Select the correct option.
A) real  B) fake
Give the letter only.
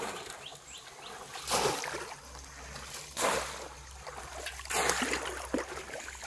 A